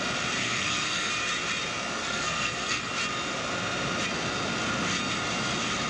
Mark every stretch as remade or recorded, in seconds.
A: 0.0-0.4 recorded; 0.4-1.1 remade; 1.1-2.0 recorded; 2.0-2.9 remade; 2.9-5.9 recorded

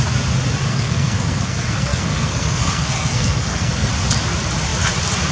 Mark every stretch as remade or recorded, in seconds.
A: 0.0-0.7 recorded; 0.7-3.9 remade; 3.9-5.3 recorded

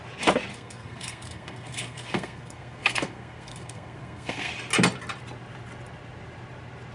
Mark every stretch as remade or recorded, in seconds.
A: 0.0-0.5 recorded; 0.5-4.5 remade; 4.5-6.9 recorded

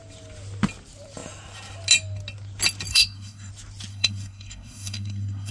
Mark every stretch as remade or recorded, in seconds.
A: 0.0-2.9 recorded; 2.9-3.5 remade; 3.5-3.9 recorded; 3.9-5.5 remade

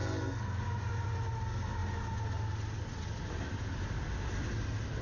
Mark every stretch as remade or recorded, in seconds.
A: 0.0-0.6 remade; 0.6-5.0 recorded

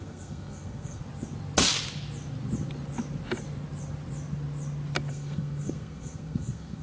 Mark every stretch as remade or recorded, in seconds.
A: 0.0-1.0 remade; 1.0-5.1 recorded; 5.1-6.8 remade